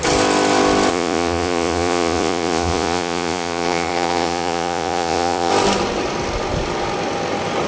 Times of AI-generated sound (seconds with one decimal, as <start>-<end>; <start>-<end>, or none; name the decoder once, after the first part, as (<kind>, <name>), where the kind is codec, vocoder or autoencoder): 0.9-5.5 (vocoder, Vocos)

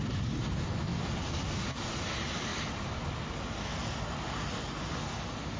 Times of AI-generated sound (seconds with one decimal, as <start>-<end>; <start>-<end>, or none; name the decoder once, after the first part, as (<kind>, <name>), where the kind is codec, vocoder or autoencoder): none

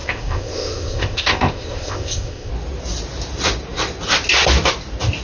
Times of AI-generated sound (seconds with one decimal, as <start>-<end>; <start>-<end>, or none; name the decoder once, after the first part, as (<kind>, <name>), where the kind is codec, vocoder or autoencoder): 0.0-2.5 (codec, ZipCodec)

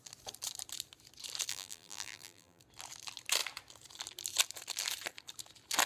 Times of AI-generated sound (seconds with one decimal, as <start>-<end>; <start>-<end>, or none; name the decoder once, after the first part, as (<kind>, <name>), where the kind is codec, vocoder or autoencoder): 1.5-2.6 (vocoder, BigVGAN v2)